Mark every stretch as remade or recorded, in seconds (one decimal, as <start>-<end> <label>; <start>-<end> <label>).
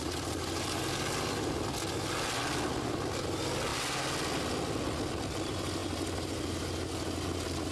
0.0-7.7 recorded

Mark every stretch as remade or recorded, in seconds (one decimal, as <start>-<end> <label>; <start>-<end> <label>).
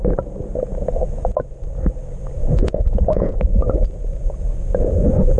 0.0-2.4 recorded; 2.4-3.4 remade; 3.4-5.4 recorded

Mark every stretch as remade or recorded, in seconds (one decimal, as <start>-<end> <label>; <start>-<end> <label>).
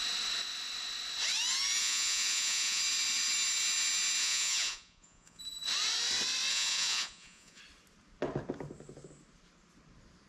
0.0-1.8 recorded; 1.8-2.8 remade; 2.8-4.2 recorded; 4.2-5.4 remade; 5.4-6.5 recorded; 6.5-7.6 remade; 7.6-10.3 recorded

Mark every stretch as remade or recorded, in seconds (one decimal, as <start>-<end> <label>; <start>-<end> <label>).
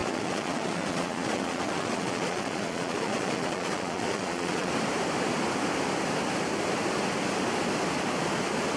0.0-4.7 remade; 4.7-8.8 recorded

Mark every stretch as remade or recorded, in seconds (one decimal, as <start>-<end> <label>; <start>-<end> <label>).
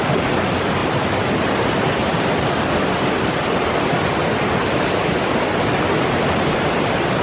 0.0-7.2 recorded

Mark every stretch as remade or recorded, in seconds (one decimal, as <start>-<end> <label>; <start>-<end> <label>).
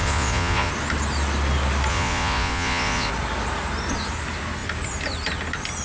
0.0-0.7 remade; 0.7-1.9 recorded; 1.9-3.1 remade; 3.1-5.8 recorded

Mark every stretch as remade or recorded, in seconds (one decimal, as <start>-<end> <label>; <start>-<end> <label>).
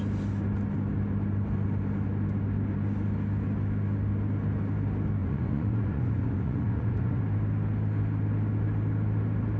0.0-5.2 recorded; 5.2-7.2 remade; 7.2-9.6 recorded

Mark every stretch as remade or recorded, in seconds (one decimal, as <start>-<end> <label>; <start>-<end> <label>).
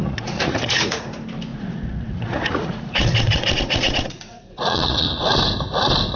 0.0-1.0 remade; 1.0-1.5 recorded; 1.5-5.2 remade; 5.2-6.2 recorded